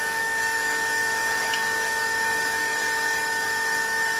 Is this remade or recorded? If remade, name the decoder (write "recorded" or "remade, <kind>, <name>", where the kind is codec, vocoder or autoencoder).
remade, codec, DAC